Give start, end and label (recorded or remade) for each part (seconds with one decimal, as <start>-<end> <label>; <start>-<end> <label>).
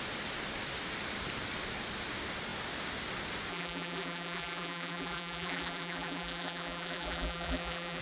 0.0-3.5 recorded; 3.5-8.0 remade